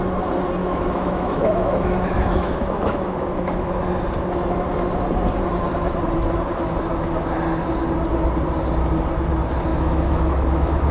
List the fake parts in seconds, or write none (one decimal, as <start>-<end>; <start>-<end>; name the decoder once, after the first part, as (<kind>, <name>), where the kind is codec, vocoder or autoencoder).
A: 0.6-3.7 (autoencoder, DAC-VAE); 9.7-10.9